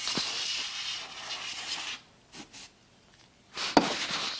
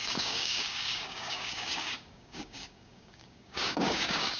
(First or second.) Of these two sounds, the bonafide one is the first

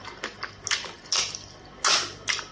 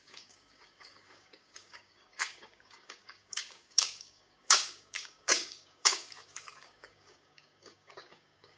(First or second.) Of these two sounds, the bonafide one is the first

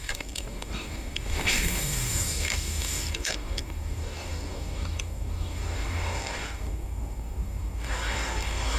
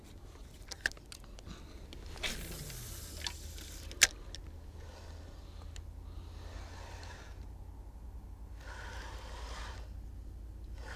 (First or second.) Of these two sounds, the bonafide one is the second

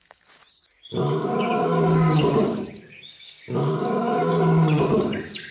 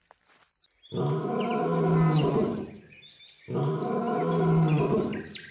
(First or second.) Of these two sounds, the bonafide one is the second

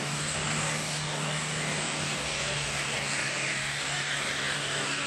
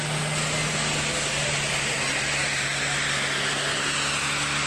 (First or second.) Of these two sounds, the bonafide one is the second